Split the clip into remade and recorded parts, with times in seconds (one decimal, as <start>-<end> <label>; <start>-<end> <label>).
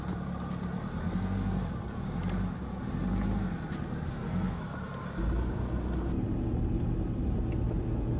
0.0-1.0 recorded; 1.0-1.6 remade; 1.6-4.1 recorded; 4.1-4.6 remade; 4.6-8.2 recorded